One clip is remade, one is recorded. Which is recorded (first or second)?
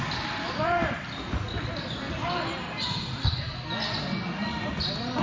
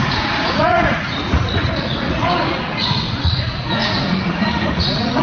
first